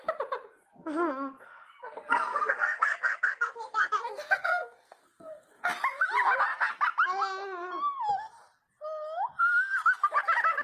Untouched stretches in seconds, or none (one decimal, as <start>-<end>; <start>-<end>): 0.0-0.6; 5.6-10.6